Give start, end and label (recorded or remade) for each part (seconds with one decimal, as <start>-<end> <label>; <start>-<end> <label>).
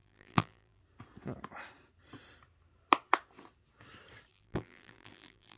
0.0-0.8 remade; 0.8-4.3 recorded; 4.3-5.6 remade